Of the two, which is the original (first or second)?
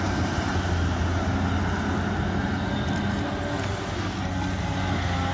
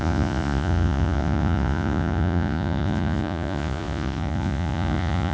first